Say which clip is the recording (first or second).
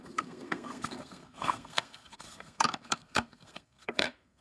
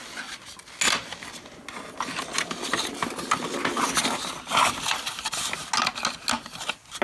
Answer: second